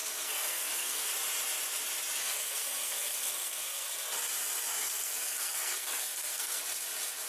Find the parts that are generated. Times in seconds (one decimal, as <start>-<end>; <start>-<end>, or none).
0.0-1.1; 2.2-3.9; 4.7-6.6

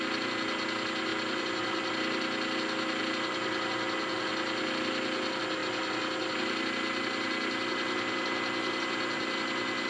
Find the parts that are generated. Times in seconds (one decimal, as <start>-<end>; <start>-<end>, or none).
none

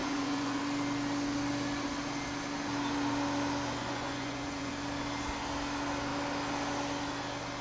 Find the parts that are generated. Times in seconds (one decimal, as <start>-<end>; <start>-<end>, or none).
0.0-0.6; 3.8-4.7